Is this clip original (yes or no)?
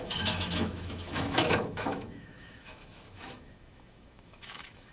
no